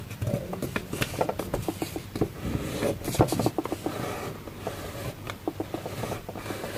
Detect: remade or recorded remade